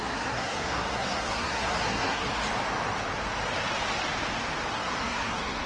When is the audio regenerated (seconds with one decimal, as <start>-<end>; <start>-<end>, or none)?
0.0-2.3; 4.7-5.7